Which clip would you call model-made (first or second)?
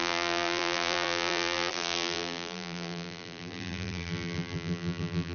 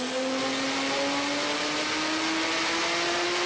first